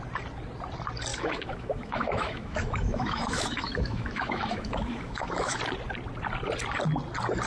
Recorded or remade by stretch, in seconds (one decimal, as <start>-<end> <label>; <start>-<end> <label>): 0.0-1.1 recorded; 1.1-5.6 remade; 5.6-7.5 recorded